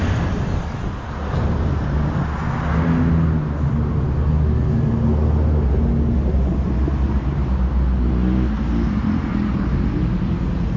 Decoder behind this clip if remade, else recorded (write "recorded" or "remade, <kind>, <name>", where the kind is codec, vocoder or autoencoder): recorded